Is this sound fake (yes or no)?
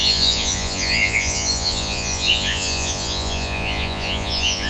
yes